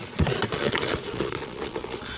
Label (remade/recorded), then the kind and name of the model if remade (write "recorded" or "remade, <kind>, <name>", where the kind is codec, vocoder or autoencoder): remade, vocoder, Vocos